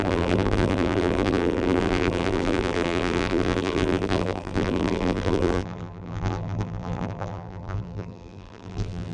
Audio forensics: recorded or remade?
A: remade